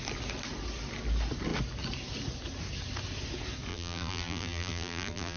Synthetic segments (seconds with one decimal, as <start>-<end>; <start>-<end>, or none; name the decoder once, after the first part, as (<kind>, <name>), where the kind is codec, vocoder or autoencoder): 3.7-5.4 (vocoder, BigVGAN v2)